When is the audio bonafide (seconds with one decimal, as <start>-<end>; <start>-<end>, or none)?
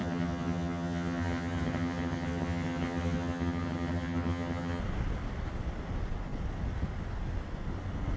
4.8-8.2